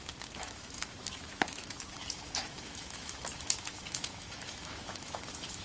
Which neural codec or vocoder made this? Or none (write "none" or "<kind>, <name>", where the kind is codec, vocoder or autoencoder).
autoencoder, DAC-VAE